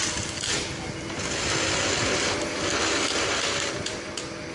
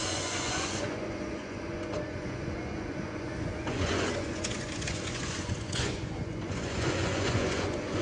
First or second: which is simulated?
second